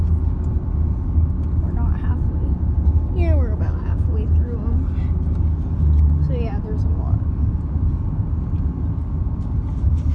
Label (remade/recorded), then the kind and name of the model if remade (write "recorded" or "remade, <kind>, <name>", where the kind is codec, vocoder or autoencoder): recorded